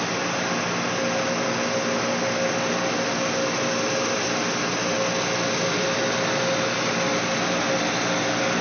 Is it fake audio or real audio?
real